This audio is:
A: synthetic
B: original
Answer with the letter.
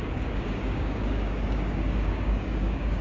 A